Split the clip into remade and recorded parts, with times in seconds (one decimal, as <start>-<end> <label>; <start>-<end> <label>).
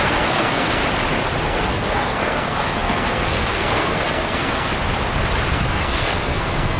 0.0-0.8 remade; 0.8-1.4 recorded; 1.4-4.7 remade; 4.7-5.5 recorded; 5.5-6.8 remade